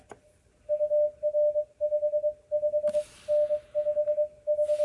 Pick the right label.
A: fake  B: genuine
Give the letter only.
B